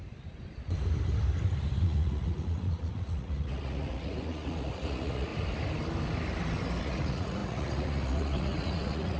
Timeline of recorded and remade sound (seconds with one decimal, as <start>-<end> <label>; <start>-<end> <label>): 0.0-1.8 recorded; 1.8-5.3 remade; 5.3-6.8 recorded; 6.8-9.2 remade